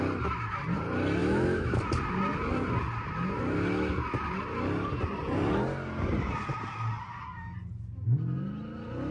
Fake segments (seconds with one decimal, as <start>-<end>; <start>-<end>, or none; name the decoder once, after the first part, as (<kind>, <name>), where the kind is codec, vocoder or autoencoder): 1.2-1.8 (autoencoder, DAC-VAE)